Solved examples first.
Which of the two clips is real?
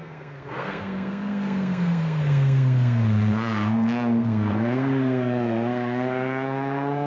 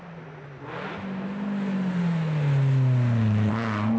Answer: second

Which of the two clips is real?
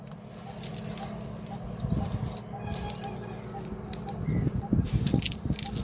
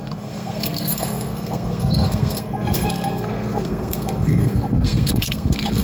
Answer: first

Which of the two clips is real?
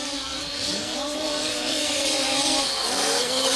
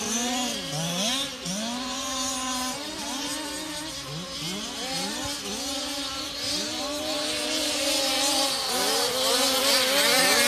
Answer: second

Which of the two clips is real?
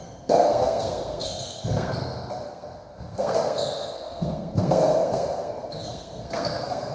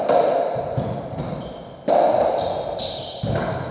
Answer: second